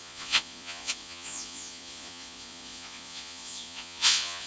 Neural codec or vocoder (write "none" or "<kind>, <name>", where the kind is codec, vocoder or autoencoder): vocoder, Vocos